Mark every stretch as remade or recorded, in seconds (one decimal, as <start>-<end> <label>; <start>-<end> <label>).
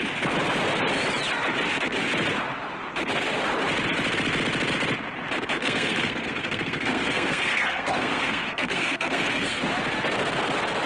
0.0-5.5 recorded; 5.5-9.6 remade; 9.6-10.9 recorded